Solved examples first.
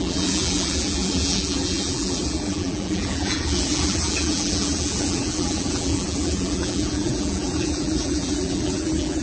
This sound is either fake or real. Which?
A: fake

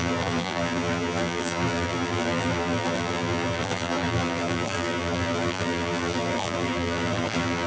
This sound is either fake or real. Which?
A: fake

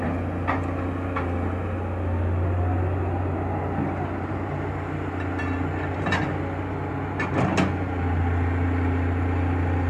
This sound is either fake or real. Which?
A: real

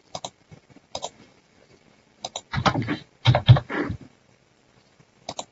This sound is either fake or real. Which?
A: fake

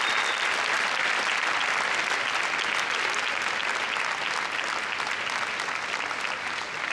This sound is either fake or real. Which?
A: real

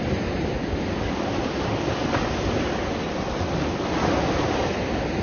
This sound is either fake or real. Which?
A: real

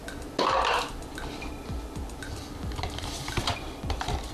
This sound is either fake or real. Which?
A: real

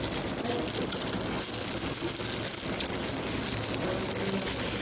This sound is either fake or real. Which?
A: real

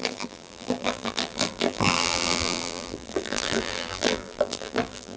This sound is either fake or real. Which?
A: fake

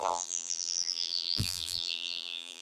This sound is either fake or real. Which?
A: fake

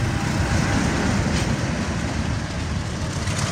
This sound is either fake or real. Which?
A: real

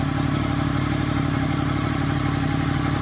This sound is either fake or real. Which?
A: fake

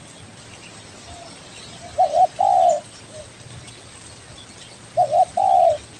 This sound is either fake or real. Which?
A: real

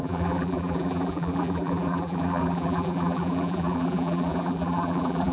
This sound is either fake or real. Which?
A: fake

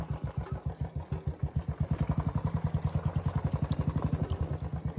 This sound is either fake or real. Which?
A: real